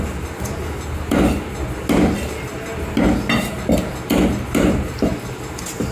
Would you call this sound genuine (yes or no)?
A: yes